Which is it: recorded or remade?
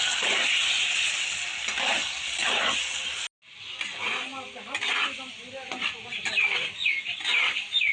recorded